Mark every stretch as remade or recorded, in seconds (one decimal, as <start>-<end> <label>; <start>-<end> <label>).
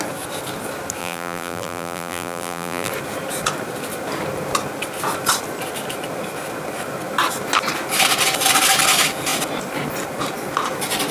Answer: 0.0-1.0 recorded; 1.0-2.9 remade; 2.9-11.1 recorded